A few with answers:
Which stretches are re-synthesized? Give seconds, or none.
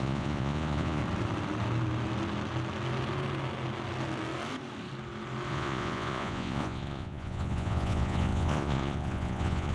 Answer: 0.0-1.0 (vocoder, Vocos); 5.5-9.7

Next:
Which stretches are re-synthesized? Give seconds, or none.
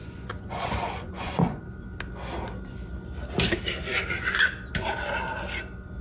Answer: 0.0-1.6 (vocoder, Vocos)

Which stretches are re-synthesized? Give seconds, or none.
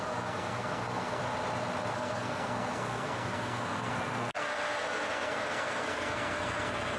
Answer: 0.0-1.2 (codec, SNAC); 1.9-7.0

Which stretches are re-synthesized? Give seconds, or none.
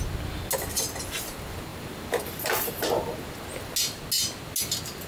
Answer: 1.7-2.8 (vocoder, BigVGAN v2)